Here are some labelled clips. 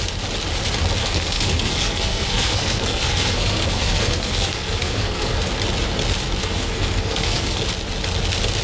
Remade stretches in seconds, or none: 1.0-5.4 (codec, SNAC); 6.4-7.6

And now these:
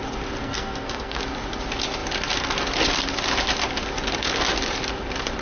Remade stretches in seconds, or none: 0.4-1.2 (codec, SNAC)

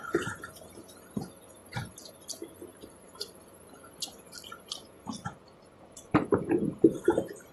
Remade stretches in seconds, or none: 1.6-2.1 (vocoder, BigVGAN v2); 2.7-7.5

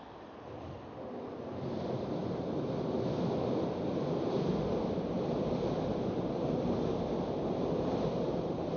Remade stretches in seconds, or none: none

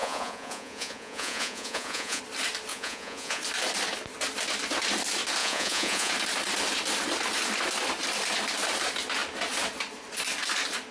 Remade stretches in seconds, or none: 0.0-2.2 (vocoder, Vocos); 2.7-3.4; 5.4-6.1

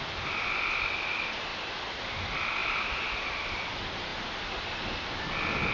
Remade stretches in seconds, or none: 1.5-2.1 (vocoder, BigVGAN v2); 2.6-3.3

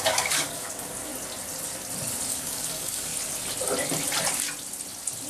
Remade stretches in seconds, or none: 0.0-1.1 (codec, DAC); 2.3-3.1